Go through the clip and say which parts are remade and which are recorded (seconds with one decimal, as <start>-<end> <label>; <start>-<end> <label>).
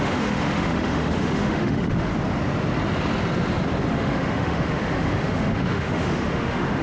0.0-2.1 remade; 2.1-3.9 recorded; 3.9-6.8 remade